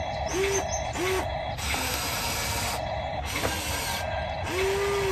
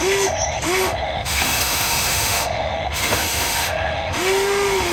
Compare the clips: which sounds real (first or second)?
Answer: first